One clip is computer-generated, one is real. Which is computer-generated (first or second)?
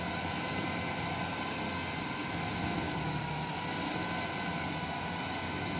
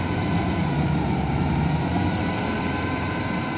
second